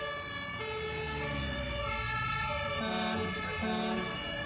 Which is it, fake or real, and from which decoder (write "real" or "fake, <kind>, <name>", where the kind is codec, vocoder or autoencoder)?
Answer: real